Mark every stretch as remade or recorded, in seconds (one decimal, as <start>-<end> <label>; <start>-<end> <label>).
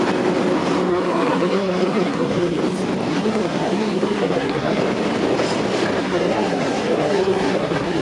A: 0.0-0.9 recorded; 0.9-2.6 remade; 2.6-3.1 recorded; 3.1-4.8 remade; 4.8-6.0 recorded; 6.0-8.0 remade